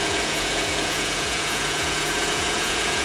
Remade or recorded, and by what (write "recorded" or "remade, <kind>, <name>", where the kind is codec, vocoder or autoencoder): remade, vocoder, Vocos